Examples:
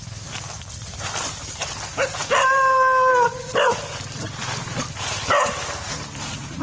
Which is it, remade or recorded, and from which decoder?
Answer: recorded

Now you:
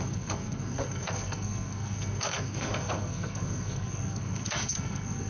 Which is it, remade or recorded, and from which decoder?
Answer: remade, codec, SNAC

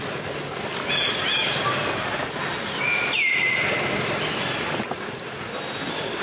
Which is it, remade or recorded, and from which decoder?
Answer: recorded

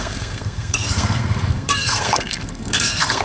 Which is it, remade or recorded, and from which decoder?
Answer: remade, codec, SNAC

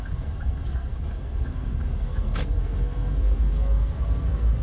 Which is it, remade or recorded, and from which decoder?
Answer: remade, codec, SNAC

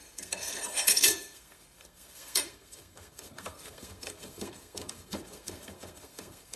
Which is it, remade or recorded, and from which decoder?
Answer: remade, codec, SNAC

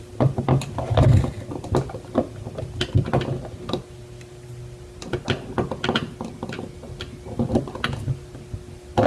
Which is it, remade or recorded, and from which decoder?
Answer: recorded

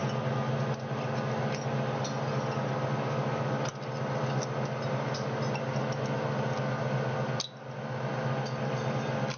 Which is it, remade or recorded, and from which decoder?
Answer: recorded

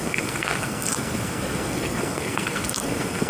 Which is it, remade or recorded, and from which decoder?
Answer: remade, codec, SNAC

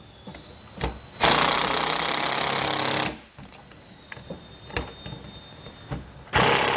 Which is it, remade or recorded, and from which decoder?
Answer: recorded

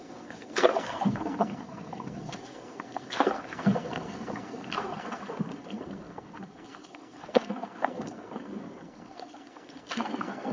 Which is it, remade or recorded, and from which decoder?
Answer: remade, codec, SNAC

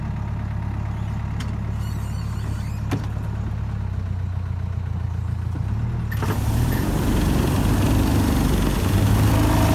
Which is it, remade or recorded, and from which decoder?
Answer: recorded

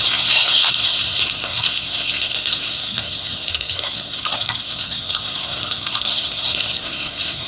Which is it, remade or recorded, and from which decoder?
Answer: remade, codec, SNAC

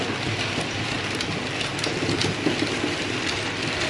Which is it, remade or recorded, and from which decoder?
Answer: recorded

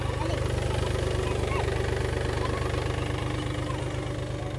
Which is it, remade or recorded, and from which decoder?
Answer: recorded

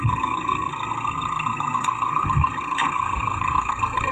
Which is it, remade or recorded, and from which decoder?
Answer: remade, codec, SNAC